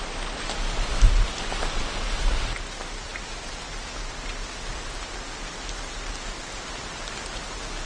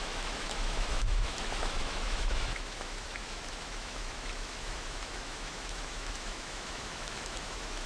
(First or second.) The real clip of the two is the first